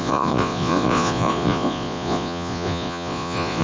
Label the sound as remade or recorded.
remade